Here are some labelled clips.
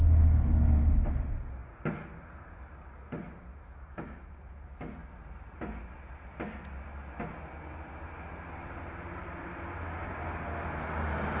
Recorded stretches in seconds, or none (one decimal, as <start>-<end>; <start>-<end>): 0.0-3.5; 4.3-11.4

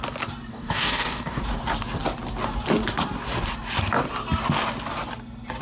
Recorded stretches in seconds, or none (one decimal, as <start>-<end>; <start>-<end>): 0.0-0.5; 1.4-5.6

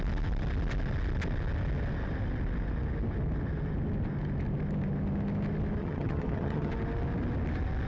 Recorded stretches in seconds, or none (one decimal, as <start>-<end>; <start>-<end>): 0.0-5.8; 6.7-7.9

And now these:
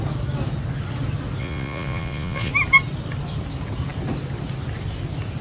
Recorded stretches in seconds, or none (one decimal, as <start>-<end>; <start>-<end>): 0.0-1.4; 2.5-5.4